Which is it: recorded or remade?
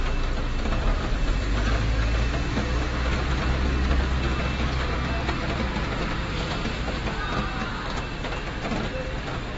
recorded